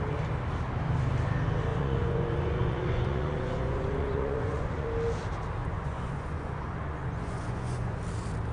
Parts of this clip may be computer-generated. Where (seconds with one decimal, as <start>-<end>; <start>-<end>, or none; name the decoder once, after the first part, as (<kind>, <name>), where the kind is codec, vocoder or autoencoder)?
1.7-4.9 (vocoder, Vocos); 5.6-8.0